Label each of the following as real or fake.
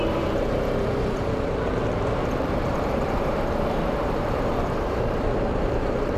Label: fake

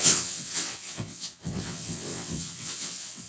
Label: fake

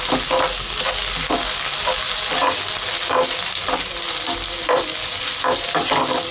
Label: real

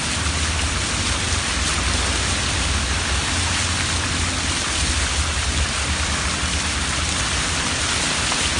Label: real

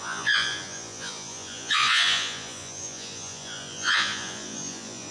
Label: fake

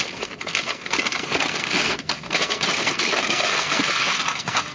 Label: fake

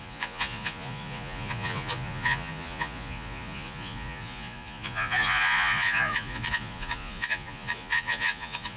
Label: fake